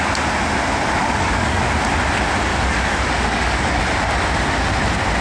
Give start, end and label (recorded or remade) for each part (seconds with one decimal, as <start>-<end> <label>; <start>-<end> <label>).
0.0-1.0 recorded; 1.0-1.6 remade; 1.6-2.5 recorded; 2.5-3.8 remade; 3.8-5.2 recorded